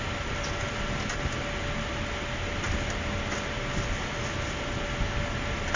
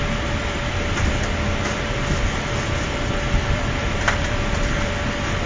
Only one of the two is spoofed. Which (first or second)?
second